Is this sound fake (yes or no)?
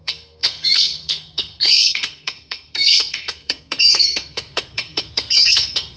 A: yes